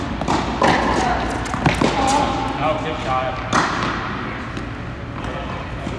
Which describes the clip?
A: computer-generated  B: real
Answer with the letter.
B